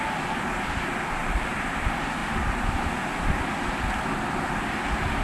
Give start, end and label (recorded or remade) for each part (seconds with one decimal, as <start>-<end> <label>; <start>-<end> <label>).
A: 0.0-1.2 recorded; 1.2-1.8 remade; 1.8-2.2 recorded; 2.2-3.4 remade; 3.4-5.2 recorded